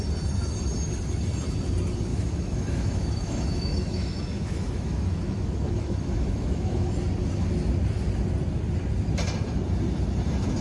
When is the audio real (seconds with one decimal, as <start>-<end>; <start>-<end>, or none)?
0.0-2.1; 6.9-10.6